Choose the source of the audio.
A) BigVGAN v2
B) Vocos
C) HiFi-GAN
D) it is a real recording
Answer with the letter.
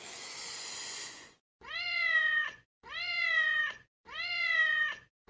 B